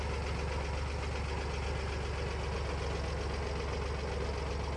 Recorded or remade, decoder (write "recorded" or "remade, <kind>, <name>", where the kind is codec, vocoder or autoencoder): recorded